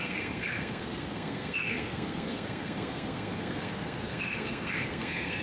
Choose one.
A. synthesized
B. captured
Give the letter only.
A